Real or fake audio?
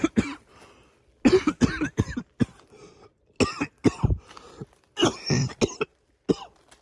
real